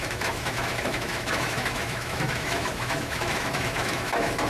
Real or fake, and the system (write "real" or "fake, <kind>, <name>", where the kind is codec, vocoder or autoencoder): fake, autoencoder, DAC-VAE